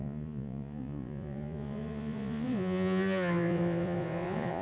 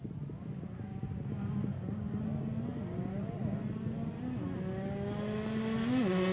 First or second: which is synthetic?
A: first